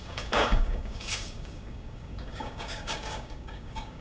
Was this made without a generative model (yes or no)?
no